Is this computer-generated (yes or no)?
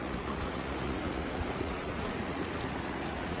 yes